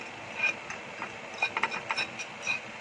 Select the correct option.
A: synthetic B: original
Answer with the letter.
B